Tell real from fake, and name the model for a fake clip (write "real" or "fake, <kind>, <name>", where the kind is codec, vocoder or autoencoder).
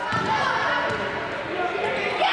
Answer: real